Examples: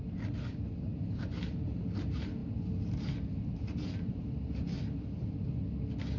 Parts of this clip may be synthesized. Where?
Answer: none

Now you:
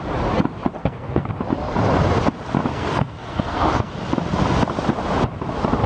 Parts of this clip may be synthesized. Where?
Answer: 0.8-1.3 (codec, SNAC); 2.7-3.9

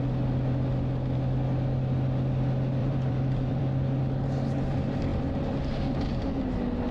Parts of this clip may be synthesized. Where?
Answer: 2.8-3.6 (vocoder, BigVGAN v2)

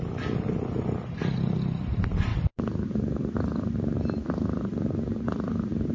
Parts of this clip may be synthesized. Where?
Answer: none

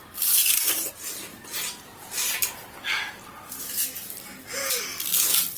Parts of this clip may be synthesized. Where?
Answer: 0.4-0.9 (vocoder, BigVGAN v2); 1.3-4.4

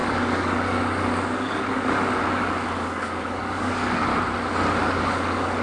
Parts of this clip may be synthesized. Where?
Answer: 0.0-4.1 (codec, DAC); 4.8-5.6